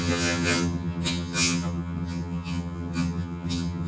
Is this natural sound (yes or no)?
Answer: no